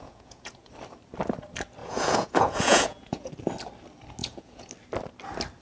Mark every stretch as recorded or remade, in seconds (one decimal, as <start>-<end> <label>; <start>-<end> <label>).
0.0-0.7 remade; 0.7-1.8 recorded; 1.8-3.3 remade; 3.3-4.2 recorded; 4.2-4.7 remade; 4.7-5.6 recorded